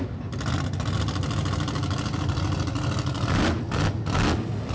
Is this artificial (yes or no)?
no